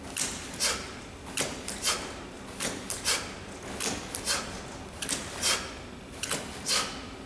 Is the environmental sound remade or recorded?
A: recorded